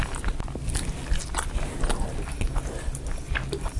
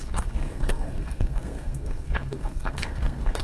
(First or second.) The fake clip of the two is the second